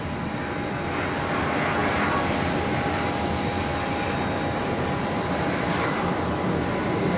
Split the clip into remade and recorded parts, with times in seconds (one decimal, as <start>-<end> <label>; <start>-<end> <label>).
0.0-7.2 recorded